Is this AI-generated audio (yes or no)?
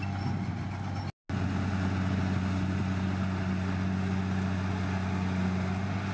no